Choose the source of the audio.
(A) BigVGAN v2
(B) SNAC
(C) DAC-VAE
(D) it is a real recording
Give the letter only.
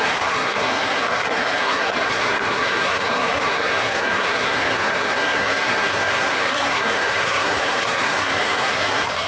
B